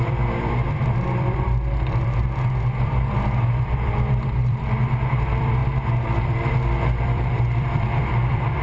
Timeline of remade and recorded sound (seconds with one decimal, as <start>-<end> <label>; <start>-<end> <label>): 0.0-2.2 remade; 2.2-2.8 recorded; 2.8-5.6 remade; 5.6-6.2 recorded; 6.2-8.6 remade